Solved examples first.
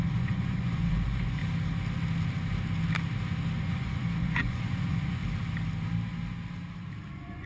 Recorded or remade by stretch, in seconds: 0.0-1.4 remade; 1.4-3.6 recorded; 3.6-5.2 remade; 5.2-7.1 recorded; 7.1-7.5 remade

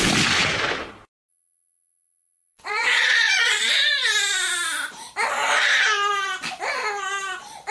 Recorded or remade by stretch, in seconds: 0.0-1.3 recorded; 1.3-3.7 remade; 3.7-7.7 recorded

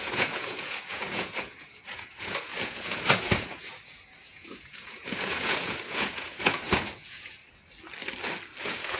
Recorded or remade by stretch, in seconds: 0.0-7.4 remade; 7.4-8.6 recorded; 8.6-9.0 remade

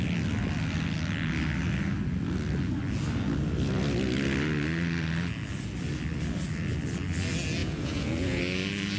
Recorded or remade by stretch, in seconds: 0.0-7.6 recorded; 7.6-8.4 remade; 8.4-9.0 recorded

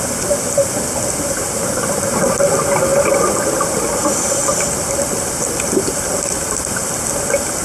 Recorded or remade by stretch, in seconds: 0.0-7.6 recorded

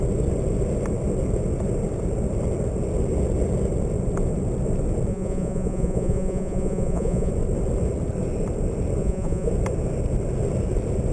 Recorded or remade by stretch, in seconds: 0.0-5.1 recorded; 5.1-7.3 remade; 7.3-9.0 recorded; 9.0-9.5 remade; 9.5-11.1 recorded